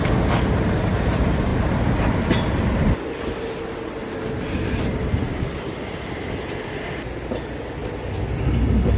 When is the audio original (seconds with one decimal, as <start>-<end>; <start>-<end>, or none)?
0.0-9.0